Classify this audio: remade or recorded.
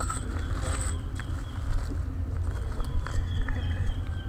remade